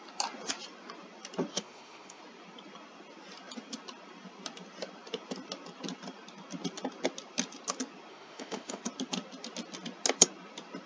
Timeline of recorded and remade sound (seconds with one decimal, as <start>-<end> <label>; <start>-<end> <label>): 0.0-1.5 recorded; 1.5-2.2 remade; 2.2-8.1 recorded; 8.1-8.8 remade; 8.8-10.9 recorded